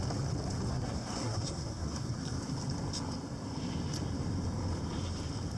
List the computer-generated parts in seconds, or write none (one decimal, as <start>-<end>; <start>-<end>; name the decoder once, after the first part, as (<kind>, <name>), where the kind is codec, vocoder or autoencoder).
0.7-2.1 (codec, SNAC)

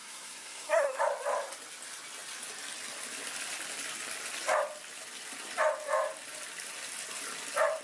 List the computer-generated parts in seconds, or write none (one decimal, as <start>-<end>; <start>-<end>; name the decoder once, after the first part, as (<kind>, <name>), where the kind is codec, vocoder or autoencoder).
0.0-1.0 (codec, SNAC)

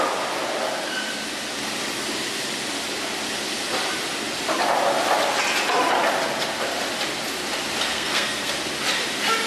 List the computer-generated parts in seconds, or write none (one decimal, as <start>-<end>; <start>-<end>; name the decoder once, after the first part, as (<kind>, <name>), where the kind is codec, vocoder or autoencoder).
7.9-8.5 (codec, SNAC)

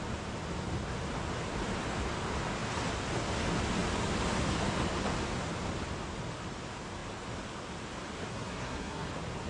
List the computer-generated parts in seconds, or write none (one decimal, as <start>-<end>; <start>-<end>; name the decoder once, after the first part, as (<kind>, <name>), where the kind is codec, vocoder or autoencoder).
8.3-9.1 (codec, SNAC)

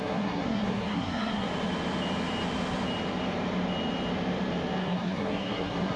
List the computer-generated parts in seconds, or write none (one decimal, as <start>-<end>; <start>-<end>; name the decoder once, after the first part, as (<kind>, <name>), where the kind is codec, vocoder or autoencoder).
0.0-1.5 (codec, SNAC); 4.8-6.0

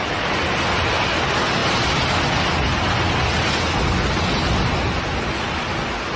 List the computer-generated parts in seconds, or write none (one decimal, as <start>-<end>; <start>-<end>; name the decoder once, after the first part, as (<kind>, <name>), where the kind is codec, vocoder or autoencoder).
none

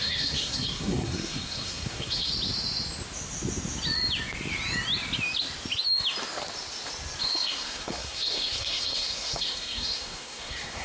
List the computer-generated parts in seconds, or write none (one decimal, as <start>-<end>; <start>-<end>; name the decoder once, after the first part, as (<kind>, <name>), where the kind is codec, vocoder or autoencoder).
0.0-2.3 (codec, SNAC); 7.2-10.8

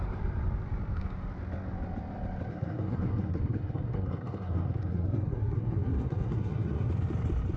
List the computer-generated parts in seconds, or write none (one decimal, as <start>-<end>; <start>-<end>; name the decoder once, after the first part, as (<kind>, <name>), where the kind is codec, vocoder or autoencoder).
2.5-6.9 (codec, SNAC)